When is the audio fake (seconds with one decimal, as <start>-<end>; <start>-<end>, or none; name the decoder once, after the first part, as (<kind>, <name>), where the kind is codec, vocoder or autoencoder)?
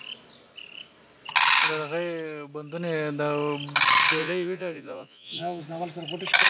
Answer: 4.2-5.6 (vocoder, Vocos)